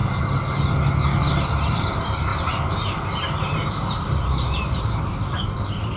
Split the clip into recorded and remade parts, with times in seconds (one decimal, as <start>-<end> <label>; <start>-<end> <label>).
0.0-2.3 recorded; 2.3-6.0 remade